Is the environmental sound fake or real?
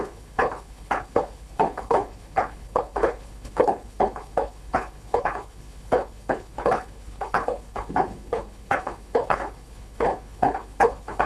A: fake